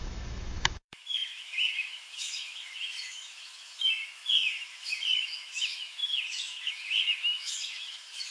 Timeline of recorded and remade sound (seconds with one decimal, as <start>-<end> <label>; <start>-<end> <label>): 0.0-8.3 remade